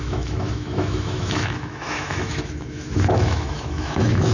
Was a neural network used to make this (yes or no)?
yes